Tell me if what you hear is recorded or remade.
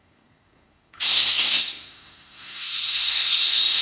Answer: remade